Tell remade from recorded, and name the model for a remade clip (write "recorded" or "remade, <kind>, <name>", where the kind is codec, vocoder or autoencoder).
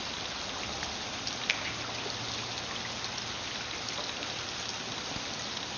recorded